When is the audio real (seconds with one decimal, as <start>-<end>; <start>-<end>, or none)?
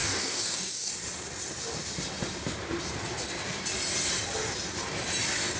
0.9-5.6